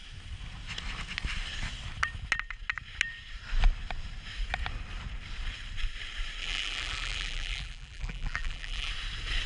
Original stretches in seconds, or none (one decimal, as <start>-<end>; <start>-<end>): 0.0-6.4; 8.9-9.5